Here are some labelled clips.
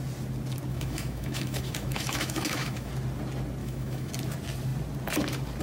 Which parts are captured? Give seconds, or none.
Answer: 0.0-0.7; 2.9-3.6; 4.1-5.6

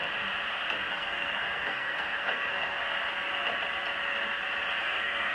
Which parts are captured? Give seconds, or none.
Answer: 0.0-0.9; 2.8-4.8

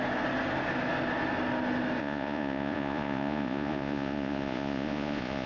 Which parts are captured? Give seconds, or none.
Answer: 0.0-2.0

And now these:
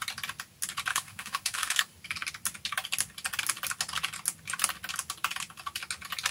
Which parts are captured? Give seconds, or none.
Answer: 0.0-0.9; 1.8-6.3